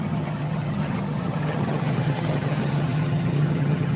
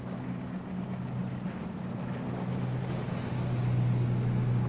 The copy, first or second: first